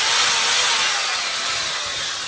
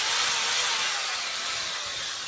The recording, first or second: first